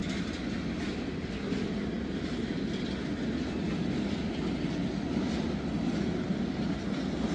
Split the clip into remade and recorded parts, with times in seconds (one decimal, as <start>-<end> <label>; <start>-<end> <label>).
0.0-7.3 recorded